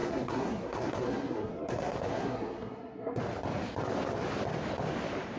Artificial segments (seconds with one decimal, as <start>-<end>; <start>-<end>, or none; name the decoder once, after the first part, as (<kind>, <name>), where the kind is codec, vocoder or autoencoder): 0.0-3.2 (codec, SNAC)